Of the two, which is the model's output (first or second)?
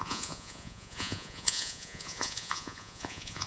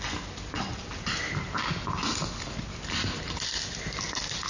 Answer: first